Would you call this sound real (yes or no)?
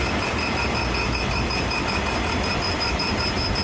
yes